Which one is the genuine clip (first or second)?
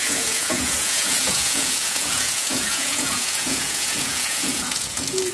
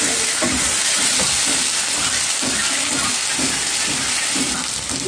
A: second